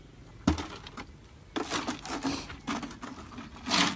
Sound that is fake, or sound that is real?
real